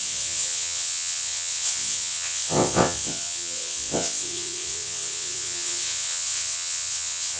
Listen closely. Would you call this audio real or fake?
fake